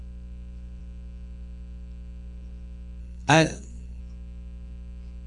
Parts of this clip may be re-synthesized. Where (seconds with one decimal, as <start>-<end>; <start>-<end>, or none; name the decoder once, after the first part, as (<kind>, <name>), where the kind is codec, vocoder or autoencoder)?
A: 3.0-4.0 (codec, SNAC)